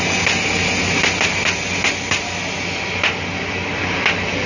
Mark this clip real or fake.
real